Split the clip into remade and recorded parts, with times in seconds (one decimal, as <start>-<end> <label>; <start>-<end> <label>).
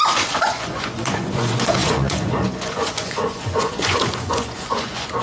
0.0-5.2 remade